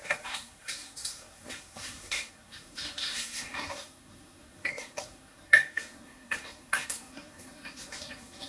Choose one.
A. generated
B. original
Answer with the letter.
A